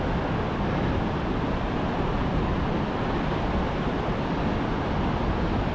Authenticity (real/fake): real